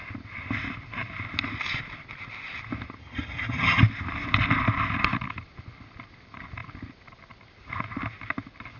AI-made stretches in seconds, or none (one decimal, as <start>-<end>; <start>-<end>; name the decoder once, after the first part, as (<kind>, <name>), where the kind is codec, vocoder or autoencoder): 3.0-3.8 (vocoder, HiFi-GAN)